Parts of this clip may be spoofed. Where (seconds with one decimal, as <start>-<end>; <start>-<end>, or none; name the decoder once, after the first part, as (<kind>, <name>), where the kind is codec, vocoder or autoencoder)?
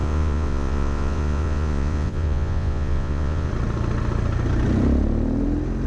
0.0-3.5 (vocoder, Vocos)